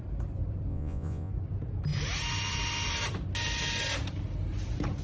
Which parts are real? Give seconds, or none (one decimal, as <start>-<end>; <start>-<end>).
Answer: 0.0-0.7; 1.3-5.0